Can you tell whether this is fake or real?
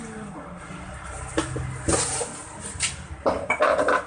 real